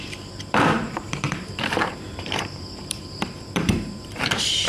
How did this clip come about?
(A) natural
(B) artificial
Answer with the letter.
B